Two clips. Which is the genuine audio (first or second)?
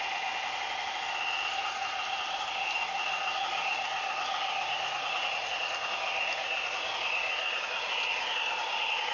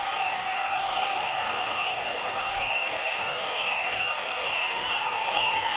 first